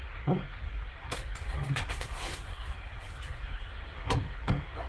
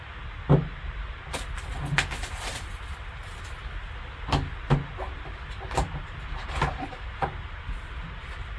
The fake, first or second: first